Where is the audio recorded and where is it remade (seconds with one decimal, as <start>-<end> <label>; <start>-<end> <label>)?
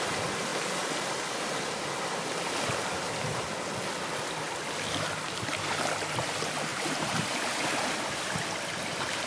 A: 0.0-6.7 recorded; 6.7-8.3 remade; 8.3-9.3 recorded